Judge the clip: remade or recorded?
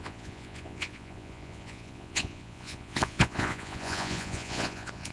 remade